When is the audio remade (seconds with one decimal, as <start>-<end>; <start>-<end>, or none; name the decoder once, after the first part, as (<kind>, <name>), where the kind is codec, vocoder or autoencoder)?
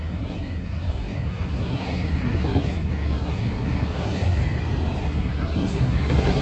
0.0-4.4 (codec, SNAC); 5.0-6.4